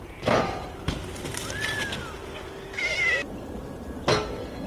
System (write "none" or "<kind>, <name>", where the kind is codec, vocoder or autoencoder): none